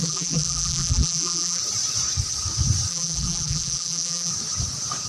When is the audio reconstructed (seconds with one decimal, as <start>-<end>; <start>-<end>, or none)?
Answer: 0.0-1.6; 2.9-4.3